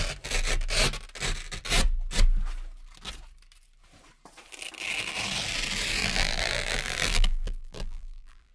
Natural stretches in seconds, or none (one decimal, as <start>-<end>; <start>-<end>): 0.0-6.0